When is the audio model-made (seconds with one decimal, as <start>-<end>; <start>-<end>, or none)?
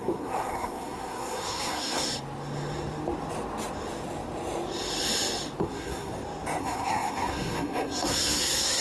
0.0-2.1; 5.6-6.1; 6.6-8.8